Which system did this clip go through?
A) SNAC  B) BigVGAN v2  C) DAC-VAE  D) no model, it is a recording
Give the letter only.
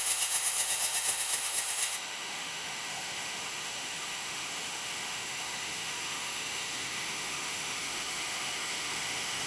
C